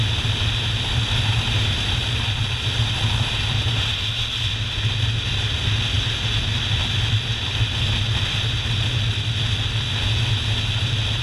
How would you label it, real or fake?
real